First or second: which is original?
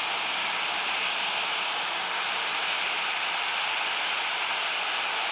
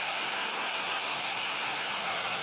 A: first